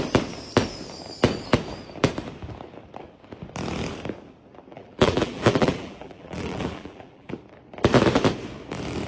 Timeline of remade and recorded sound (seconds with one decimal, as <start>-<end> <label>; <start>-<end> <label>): 0.0-4.7 recorded; 4.7-7.3 remade; 7.3-9.1 recorded